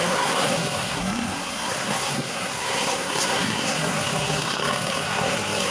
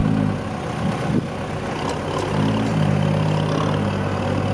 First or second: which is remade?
first